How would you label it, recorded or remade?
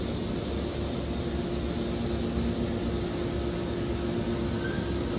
recorded